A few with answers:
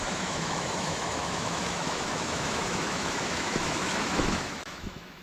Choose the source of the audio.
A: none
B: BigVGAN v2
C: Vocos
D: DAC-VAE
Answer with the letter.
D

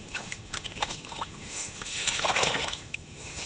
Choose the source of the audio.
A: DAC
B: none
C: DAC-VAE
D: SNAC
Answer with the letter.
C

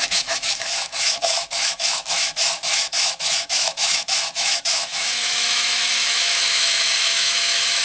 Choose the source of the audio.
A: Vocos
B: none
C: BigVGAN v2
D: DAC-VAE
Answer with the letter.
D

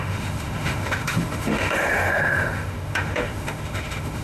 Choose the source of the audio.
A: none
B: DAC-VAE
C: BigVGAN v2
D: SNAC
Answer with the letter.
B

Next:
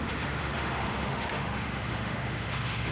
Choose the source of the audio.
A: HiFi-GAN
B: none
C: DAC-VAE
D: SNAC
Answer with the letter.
C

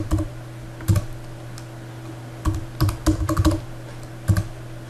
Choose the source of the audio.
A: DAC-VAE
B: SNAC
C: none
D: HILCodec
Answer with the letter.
C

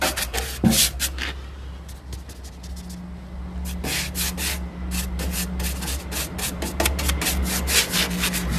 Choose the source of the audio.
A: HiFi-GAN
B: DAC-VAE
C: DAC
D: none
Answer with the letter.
D